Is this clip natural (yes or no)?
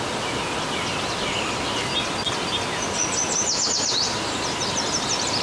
yes